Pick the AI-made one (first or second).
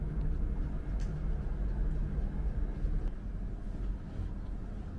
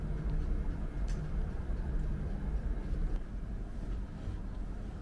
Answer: second